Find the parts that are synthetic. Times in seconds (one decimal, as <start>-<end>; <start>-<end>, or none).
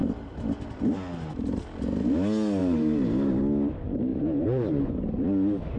2.6-3.4; 4.1-4.8